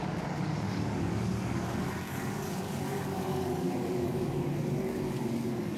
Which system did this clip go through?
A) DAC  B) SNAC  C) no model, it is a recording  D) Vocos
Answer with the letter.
A